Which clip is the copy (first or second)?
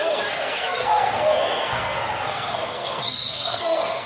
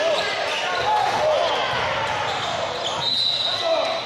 first